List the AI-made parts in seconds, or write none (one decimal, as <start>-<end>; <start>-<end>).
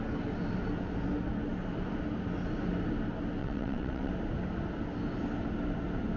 3.4-4.1